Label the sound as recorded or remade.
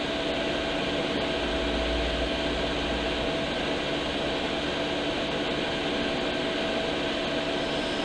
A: recorded